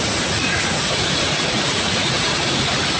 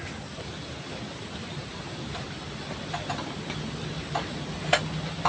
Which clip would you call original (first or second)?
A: second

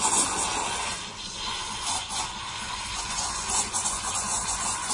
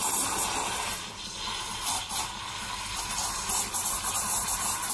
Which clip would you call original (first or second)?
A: second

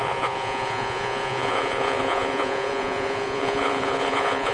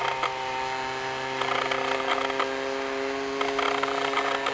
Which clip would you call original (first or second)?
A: second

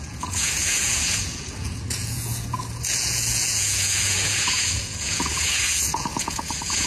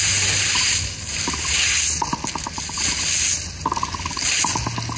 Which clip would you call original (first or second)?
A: second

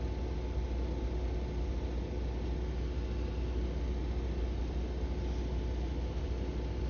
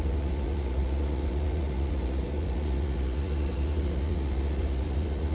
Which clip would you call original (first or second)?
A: first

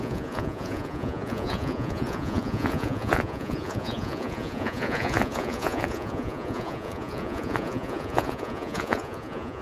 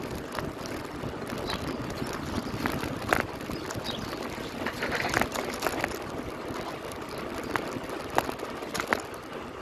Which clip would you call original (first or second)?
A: second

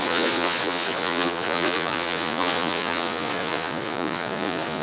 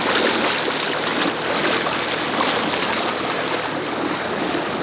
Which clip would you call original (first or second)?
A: second